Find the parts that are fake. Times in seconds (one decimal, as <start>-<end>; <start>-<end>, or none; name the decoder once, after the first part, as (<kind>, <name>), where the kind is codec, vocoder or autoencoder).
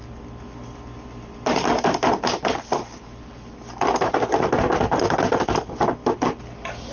none